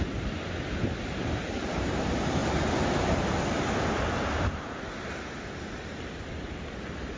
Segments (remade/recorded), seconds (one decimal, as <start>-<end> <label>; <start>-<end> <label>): 0.0-7.2 recorded